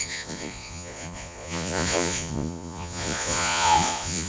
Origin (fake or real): fake